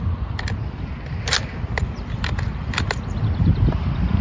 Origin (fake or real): real